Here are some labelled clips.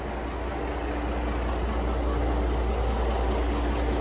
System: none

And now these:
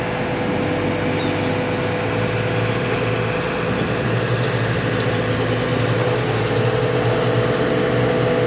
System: none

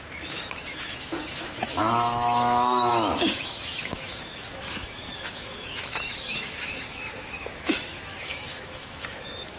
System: autoencoder, DAC-VAE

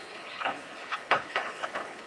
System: codec, HILCodec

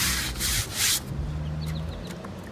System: none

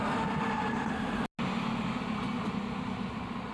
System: none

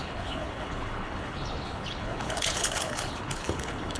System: codec, HILCodec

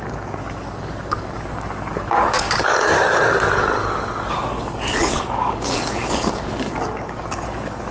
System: codec, DAC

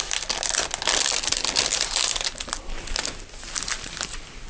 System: none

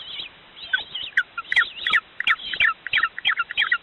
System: vocoder, BigVGAN v2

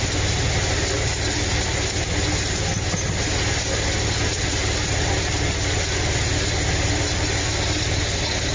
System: none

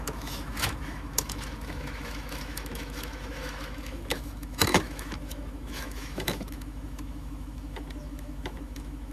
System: autoencoder, DAC-VAE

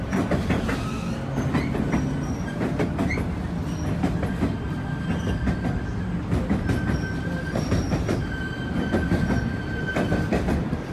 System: none